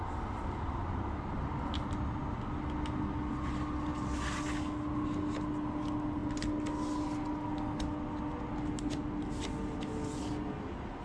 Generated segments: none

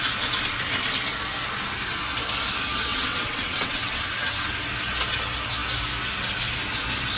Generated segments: 2.9-4.5 (vocoder, WaveNeXt)

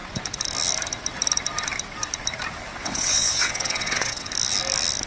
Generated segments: 2.7-4.3 (vocoder, WaveNeXt)

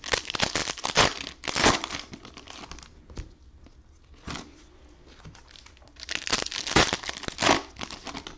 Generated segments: none

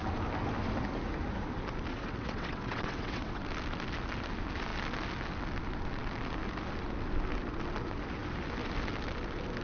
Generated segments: 1.9-3.4 (vocoder, WaveNeXt)

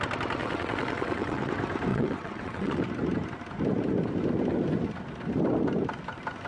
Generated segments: 0.4-1.5 (vocoder, WaveNeXt); 1.9-2.8

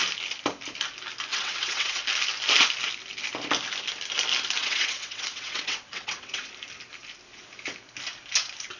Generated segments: 1.3-2.0 (vocoder, WaveNeXt); 4.6-6.5

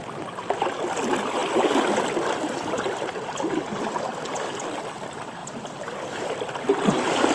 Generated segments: none